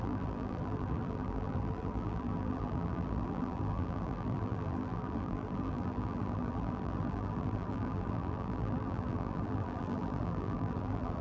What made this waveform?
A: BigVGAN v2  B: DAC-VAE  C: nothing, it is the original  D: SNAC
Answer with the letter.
A